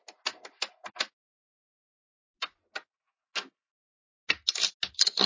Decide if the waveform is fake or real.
real